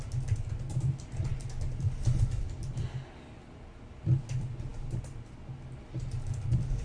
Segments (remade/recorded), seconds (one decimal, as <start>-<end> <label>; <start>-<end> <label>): 0.0-6.8 recorded